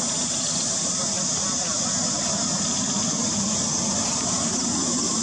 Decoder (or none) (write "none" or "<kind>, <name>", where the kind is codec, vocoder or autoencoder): none